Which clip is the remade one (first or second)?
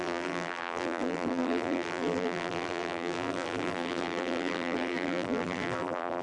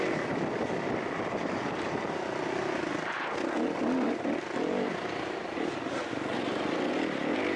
first